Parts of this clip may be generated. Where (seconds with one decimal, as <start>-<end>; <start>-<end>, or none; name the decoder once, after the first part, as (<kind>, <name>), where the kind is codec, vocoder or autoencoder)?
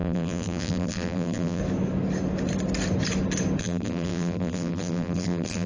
0.0-1.6 (vocoder, BigVGAN v2); 3.6-5.7